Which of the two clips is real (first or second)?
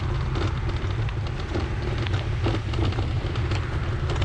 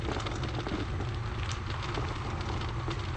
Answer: second